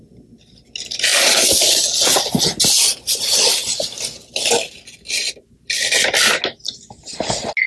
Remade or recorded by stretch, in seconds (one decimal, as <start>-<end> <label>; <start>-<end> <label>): 0.0-7.7 recorded